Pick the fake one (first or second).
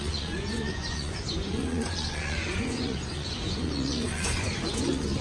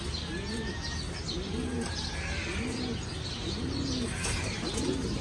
first